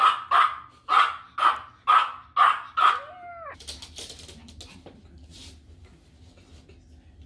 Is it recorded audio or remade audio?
recorded